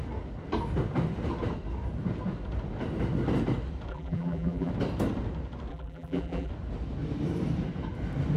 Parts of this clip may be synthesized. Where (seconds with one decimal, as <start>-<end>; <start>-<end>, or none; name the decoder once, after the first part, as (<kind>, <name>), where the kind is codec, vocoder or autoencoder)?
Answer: 3.9-4.7 (vocoder, BigVGAN v2); 5.7-6.5